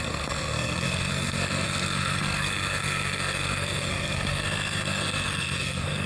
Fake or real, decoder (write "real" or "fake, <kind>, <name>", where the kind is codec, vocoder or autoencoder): fake, codec, SNAC